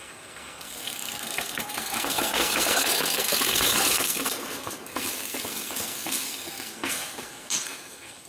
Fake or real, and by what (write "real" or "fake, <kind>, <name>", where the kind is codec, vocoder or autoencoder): fake, codec, SNAC